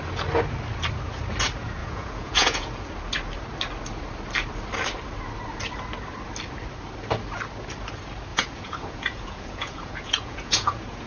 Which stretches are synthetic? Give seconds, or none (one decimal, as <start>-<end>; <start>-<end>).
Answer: 1.8-2.9; 8.3-11.1